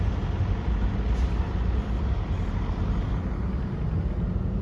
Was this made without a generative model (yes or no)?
yes